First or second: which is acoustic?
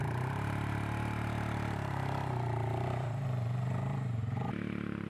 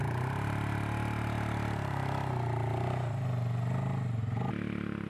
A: second